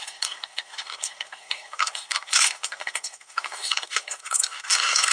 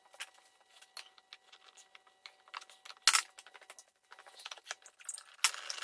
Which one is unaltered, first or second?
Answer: second